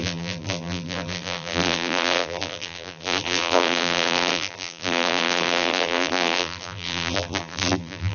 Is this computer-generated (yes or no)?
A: yes